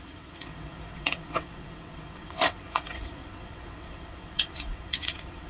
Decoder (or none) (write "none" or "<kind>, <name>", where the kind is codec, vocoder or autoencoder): vocoder, WaveNeXt